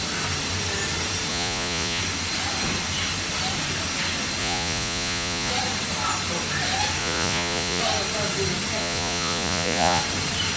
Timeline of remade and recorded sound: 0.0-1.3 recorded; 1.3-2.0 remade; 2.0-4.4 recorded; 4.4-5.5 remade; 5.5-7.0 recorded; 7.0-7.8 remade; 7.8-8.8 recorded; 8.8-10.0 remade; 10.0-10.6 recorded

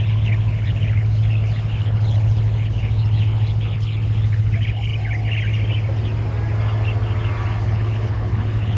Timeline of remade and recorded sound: 0.0-4.9 remade; 4.9-7.6 recorded; 7.6-8.8 remade